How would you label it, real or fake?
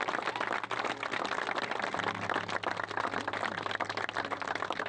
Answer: real